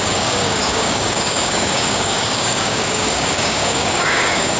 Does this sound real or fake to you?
fake